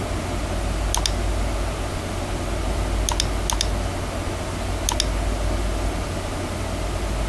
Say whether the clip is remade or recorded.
recorded